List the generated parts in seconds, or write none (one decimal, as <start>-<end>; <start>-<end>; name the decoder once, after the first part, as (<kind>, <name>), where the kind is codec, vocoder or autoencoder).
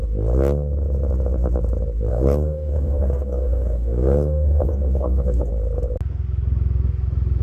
2.1-5.5 (codec, DAC)